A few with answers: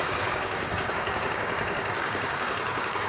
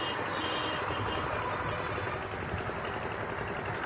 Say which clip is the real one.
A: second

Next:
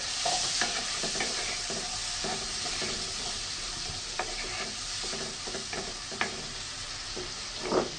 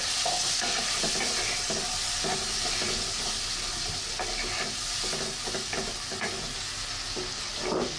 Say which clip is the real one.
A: second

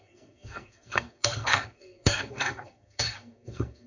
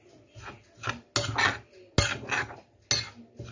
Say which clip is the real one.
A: second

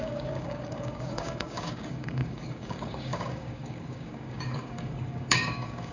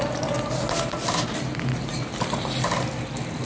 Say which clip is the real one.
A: second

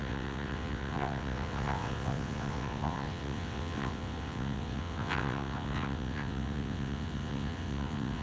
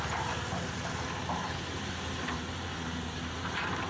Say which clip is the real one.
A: second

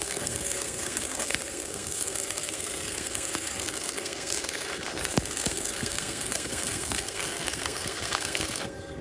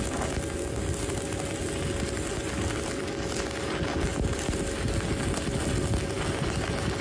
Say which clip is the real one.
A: second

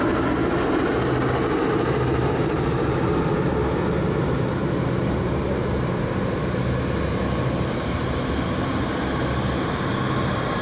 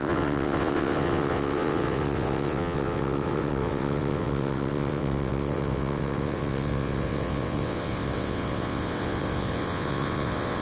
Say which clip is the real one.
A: first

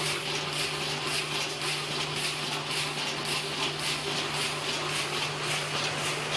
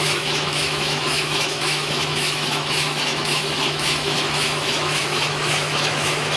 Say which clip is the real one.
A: first